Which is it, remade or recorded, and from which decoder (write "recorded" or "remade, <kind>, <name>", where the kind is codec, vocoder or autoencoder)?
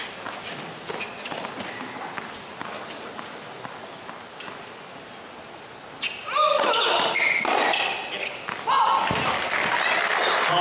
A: recorded